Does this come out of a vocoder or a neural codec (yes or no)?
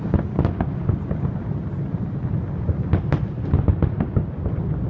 no